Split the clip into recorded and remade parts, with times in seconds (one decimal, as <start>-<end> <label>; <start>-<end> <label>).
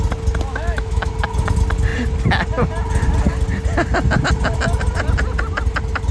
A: 0.0-0.5 recorded; 0.5-1.1 remade; 1.1-6.1 recorded